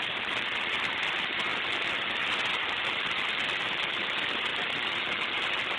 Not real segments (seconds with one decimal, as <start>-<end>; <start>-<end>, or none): 0.0-5.8